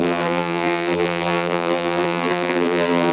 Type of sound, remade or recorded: remade